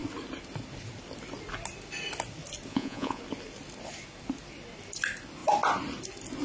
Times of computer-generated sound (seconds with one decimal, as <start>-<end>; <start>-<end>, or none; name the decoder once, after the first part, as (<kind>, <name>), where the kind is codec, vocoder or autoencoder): 2.7-3.2 (vocoder, Vocos)